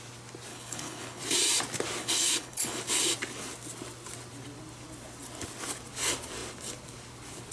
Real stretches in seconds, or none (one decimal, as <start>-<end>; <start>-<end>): 0.0-0.5; 1.2-2.0; 2.8-7.5